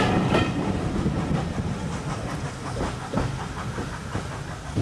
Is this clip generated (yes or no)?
no